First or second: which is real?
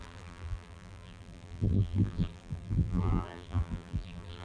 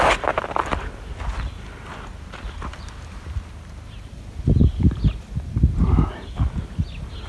second